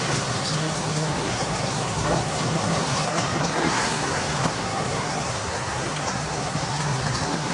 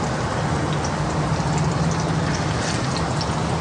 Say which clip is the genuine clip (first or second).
second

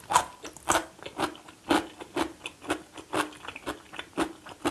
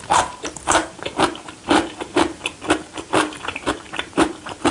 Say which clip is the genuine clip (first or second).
first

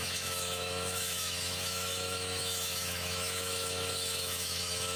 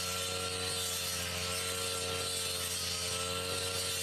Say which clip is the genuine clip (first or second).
second